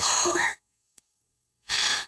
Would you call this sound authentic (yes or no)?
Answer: no